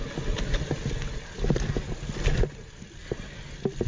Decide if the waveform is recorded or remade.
recorded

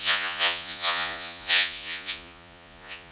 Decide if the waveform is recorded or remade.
remade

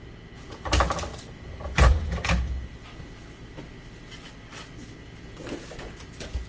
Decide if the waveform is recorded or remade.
recorded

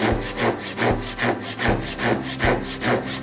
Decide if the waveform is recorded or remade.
recorded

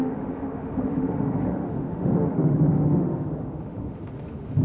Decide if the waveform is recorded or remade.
remade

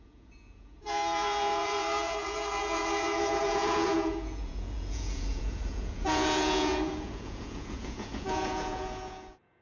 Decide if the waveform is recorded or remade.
remade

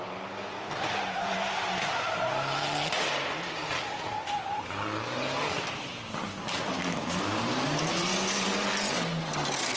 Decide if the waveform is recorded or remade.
recorded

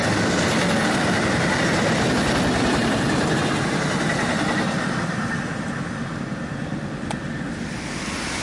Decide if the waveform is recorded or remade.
recorded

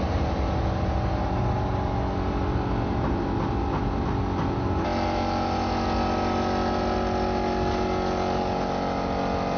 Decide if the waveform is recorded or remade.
recorded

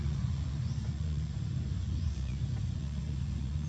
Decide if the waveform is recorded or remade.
remade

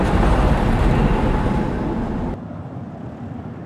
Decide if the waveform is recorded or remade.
recorded